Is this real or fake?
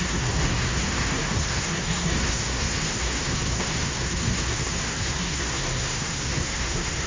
fake